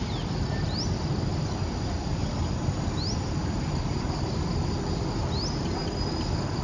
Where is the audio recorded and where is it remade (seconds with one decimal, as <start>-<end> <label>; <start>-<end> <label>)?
0.0-6.6 recorded